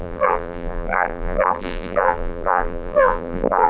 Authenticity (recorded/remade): remade